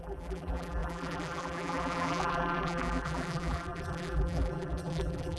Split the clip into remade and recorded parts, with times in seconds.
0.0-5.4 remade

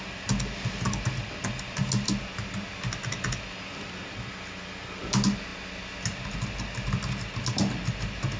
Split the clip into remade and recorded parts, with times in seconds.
0.0-8.4 recorded

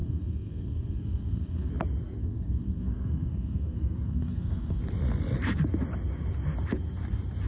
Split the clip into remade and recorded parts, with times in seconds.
0.0-1.7 remade; 1.7-2.2 recorded; 2.2-4.8 remade; 4.8-7.5 recorded

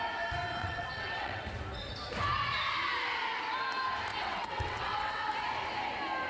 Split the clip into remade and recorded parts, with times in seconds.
0.0-0.6 recorded; 0.6-1.4 remade; 1.4-4.1 recorded; 4.1-5.3 remade; 5.3-6.3 recorded